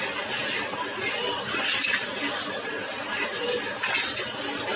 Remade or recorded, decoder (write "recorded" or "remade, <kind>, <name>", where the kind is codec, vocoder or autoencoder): recorded